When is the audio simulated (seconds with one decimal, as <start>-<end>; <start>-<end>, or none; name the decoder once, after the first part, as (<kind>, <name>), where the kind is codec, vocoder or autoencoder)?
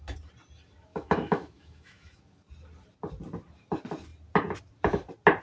0.9-2.2 (autoencoder, DAC-VAE)